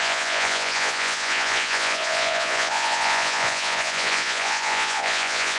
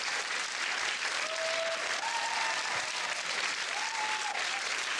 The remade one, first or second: first